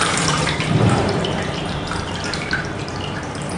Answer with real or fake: fake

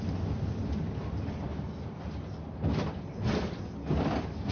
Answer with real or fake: real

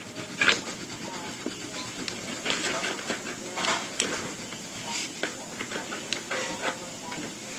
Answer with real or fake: real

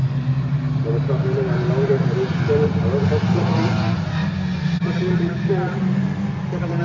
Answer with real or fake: real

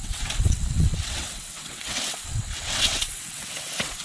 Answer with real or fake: fake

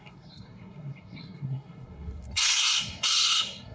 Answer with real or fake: fake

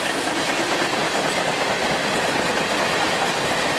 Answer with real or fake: real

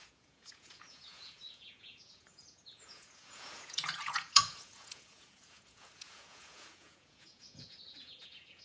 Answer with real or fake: fake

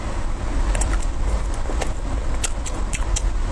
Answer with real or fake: real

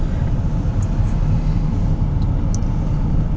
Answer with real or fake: real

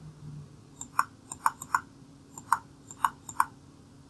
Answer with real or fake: real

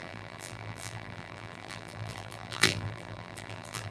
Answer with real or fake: fake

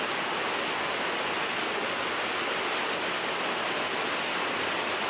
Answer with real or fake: real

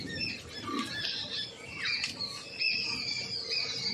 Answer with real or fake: real